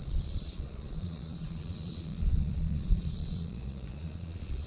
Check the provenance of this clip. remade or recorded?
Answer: remade